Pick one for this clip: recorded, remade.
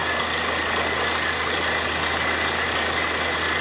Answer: recorded